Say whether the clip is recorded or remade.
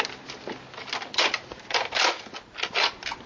recorded